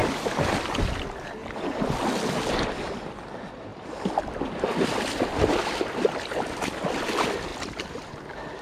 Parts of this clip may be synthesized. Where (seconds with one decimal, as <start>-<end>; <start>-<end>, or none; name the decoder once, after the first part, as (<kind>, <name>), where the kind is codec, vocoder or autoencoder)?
0.0-0.8 (vocoder, BigVGAN v2); 1.4-1.9; 7.5-8.0